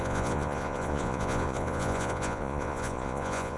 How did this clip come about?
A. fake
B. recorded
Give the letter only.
A